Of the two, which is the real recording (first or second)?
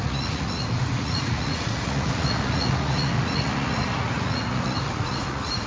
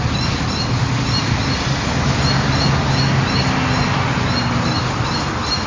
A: second